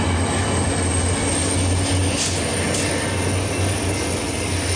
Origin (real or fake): real